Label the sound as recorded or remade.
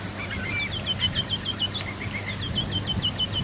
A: recorded